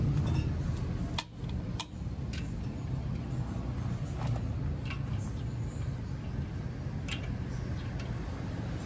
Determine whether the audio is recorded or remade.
recorded